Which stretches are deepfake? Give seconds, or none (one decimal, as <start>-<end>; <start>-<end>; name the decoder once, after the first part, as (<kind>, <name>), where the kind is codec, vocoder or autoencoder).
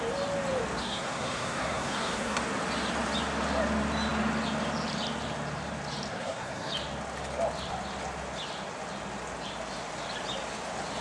0.8-2.4 (codec, SNAC); 6.1-6.7